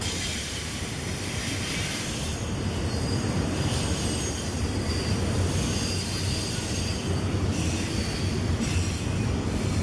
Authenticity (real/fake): real